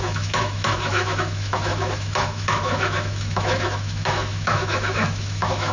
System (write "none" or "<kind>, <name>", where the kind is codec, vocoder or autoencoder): autoencoder, DAC-VAE